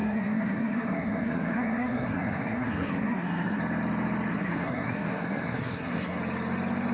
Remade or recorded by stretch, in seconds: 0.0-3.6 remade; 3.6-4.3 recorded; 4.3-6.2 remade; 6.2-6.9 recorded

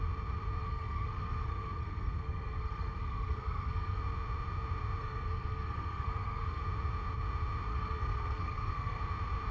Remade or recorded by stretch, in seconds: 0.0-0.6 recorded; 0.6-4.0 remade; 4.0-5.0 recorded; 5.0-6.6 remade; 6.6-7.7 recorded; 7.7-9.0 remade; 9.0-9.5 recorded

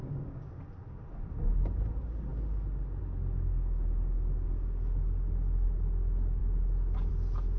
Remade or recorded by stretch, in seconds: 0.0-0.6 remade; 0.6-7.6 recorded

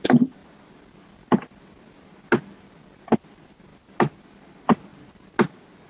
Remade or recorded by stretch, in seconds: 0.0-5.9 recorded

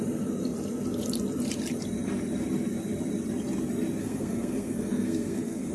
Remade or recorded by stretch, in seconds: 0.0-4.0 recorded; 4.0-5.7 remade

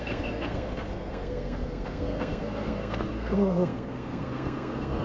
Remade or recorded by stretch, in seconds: 0.0-5.0 remade